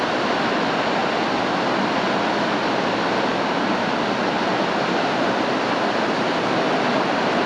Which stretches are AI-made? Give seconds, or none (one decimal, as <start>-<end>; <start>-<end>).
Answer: none